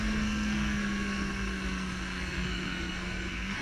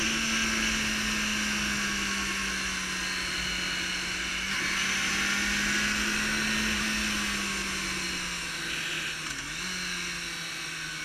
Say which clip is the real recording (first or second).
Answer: second